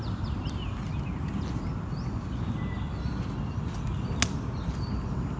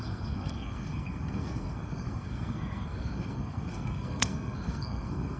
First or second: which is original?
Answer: first